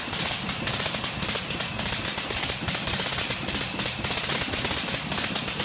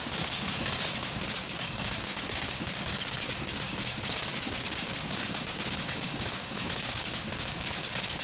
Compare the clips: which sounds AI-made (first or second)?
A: second